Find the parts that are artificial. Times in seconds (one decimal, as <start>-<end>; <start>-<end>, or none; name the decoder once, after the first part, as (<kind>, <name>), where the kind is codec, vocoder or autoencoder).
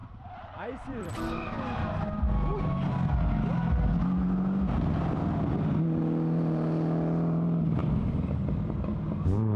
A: 0.0-1.1 (vocoder, BigVGAN v2); 7.8-8.3